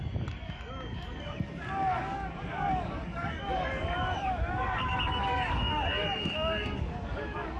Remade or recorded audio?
remade